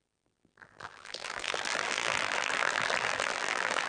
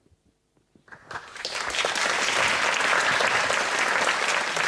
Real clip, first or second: second